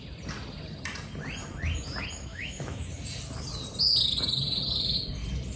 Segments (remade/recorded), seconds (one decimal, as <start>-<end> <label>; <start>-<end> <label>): 0.0-2.3 recorded; 2.3-2.9 remade; 2.9-5.6 recorded